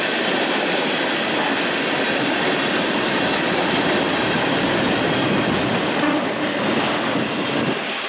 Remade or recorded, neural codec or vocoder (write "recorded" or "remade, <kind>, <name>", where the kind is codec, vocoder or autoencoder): recorded